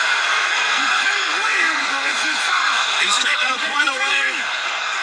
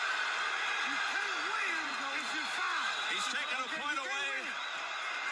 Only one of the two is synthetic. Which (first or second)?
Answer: first